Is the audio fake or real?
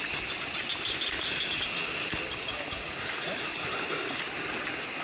real